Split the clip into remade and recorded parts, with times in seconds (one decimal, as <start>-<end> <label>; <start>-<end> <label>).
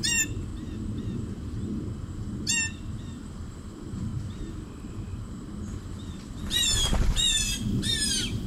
0.0-0.5 remade; 0.5-3.0 recorded; 3.0-4.1 remade; 4.1-5.8 recorded; 5.8-8.5 remade